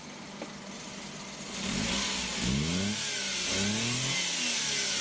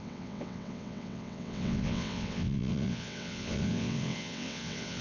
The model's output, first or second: second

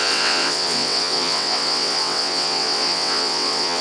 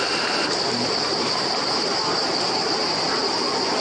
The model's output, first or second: first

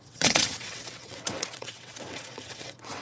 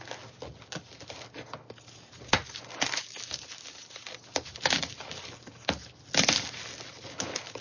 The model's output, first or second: first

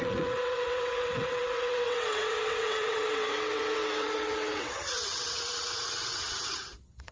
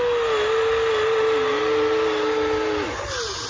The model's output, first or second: first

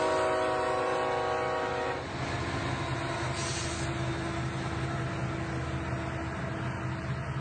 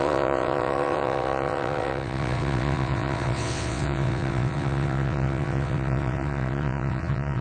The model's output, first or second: second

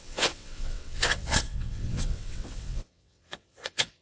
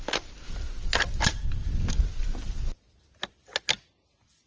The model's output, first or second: first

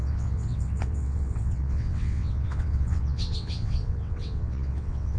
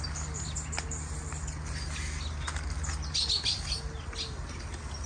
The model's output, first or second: first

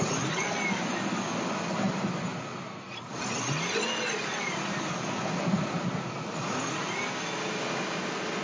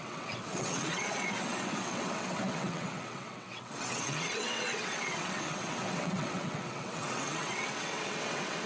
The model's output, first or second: second